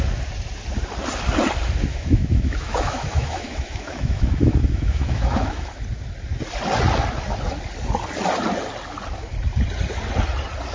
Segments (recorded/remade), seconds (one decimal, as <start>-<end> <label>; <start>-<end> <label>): 0.0-1.9 recorded; 1.9-5.7 remade; 5.7-10.7 recorded